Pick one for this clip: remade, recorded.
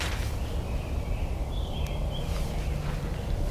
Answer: recorded